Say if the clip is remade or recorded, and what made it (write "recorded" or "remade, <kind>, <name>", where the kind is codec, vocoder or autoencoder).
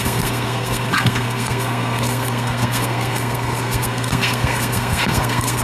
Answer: remade, codec, SNAC